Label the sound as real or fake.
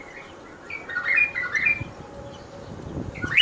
real